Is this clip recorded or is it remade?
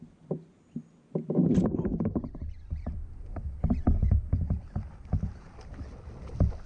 recorded